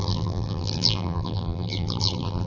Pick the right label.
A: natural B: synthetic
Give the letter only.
B